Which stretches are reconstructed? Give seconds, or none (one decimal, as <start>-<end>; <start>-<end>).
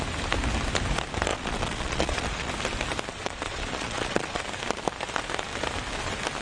1.3-2.5; 3.1-4.4